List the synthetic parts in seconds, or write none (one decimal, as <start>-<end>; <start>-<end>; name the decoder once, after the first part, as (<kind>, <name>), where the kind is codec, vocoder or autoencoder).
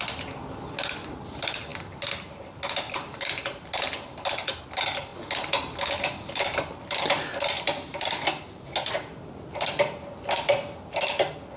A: none